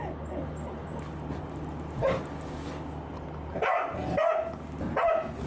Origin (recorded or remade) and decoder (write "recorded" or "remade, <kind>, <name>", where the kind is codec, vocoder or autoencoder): recorded